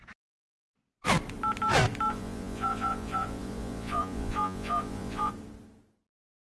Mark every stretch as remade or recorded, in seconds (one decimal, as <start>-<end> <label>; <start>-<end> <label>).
0.0-2.1 recorded; 2.1-5.3 remade; 5.3-6.5 recorded